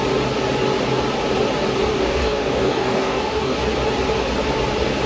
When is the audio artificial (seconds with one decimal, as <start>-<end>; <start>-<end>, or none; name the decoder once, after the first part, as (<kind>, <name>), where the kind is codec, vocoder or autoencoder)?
1.9-3.6 (codec, DAC)